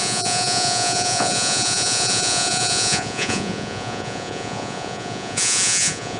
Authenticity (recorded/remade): remade